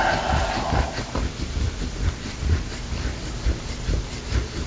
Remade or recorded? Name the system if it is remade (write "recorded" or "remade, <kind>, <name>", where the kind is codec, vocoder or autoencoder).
recorded